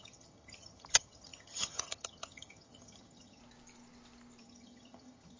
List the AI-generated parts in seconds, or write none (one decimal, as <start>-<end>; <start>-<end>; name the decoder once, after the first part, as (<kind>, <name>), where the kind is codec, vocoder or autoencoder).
0.0-3.4 (vocoder, HiFi-GAN); 4.4-5.4